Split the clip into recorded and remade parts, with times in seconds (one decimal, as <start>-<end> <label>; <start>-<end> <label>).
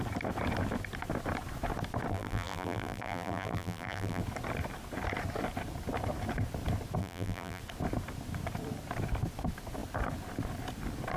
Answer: 0.0-2.1 recorded; 2.1-4.2 remade; 4.2-7.0 recorded; 7.0-7.6 remade; 7.6-11.2 recorded